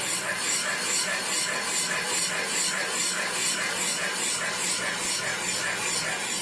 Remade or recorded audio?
recorded